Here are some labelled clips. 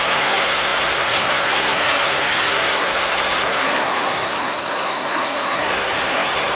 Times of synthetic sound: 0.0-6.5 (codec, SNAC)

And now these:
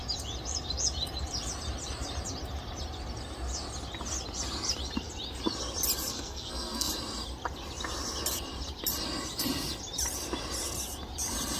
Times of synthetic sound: 6.1-6.9 (codec, SNAC)

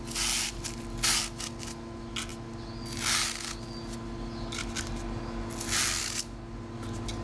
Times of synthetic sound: none

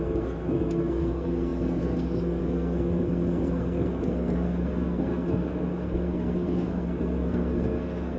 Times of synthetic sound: 0.0-8.2 (codec, SNAC)

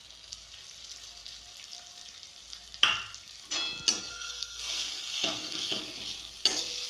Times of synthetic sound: 4.1-5.8 (codec, SNAC)

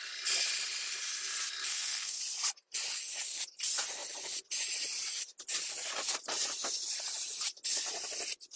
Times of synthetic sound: 1.7-2.2 (codec, SNAC)

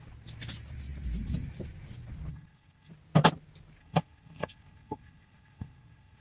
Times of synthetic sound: 2.3-2.9 (codec, SNAC); 3.8-6.2